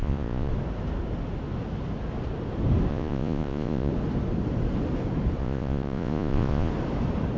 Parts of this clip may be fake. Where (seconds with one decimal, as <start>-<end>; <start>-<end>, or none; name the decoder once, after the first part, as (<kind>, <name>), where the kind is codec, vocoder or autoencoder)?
0.0-0.5 (vocoder, Vocos); 2.9-3.9; 5.4-6.7